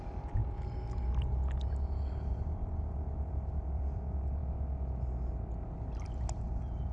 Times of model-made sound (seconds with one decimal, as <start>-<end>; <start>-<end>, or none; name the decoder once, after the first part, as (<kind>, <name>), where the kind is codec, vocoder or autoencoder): 0.0-0.4 (vocoder, BigVGAN v2); 2.1-4.4; 5.8-6.9